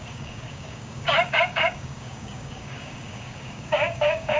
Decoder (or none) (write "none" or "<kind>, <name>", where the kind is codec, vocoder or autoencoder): codec, DAC